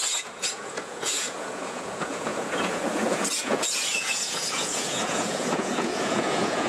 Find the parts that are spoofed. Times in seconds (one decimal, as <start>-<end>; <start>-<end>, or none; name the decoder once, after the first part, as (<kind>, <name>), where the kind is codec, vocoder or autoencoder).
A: 0.0-6.7 (vocoder, Vocos)